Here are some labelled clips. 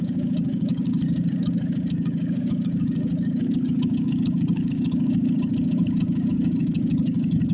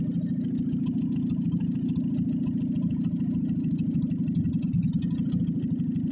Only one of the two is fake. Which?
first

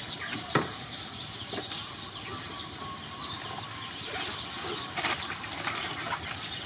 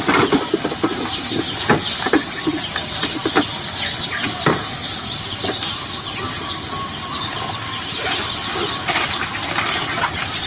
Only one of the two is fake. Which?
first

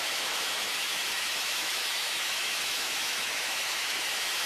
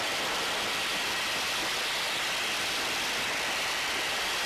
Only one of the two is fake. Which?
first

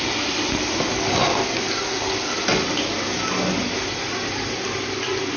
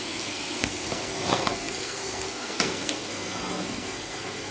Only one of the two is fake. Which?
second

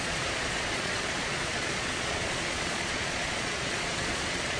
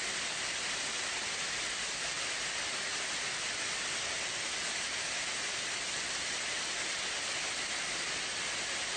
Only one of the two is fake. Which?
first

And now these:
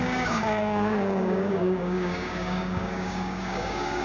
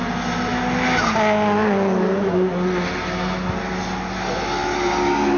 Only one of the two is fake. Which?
first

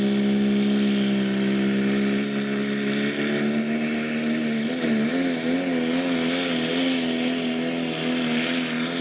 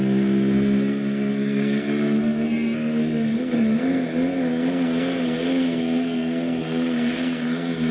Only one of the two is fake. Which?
second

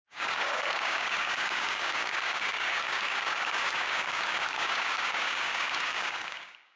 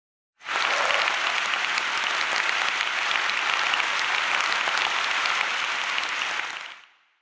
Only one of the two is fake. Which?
first